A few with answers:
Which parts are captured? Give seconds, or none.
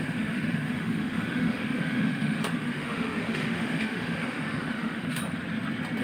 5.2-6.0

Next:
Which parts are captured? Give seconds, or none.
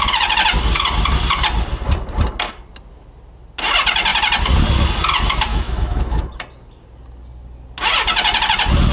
0.0-5.5; 6.2-8.9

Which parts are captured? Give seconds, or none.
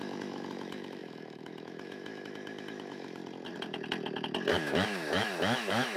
3.2-4.5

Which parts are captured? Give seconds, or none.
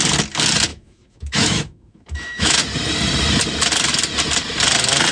0.0-0.7; 2.6-5.1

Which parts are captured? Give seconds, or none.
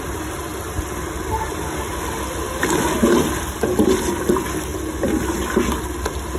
0.0-6.4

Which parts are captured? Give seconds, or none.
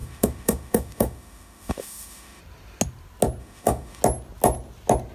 2.4-3.4; 4.0-5.1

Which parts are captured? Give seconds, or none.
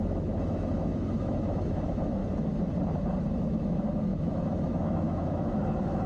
2.2-3.3